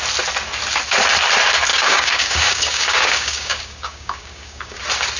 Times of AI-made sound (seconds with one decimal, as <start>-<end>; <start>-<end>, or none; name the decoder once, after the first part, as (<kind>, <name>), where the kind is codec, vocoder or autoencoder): 1.7-4.8 (codec, DAC)